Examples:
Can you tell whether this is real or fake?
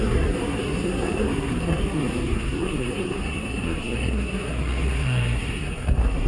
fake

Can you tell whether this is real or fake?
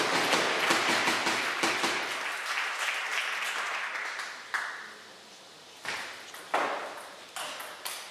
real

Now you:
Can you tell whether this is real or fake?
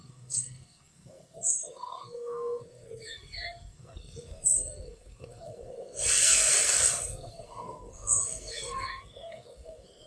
fake